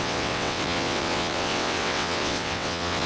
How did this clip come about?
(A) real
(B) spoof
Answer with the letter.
B